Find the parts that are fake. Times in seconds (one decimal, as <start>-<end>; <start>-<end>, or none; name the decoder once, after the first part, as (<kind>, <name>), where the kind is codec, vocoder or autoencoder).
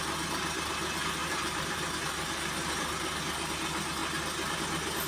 1.2-3.2 (vocoder, BigVGAN v2)